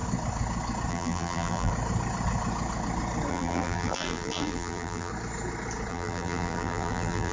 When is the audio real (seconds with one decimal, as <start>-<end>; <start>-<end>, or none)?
0.0-0.9; 1.7-3.3; 5.1-5.9